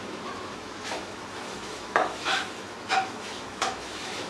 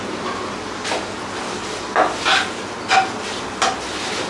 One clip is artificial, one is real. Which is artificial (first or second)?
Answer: first